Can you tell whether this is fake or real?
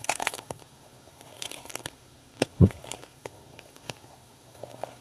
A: fake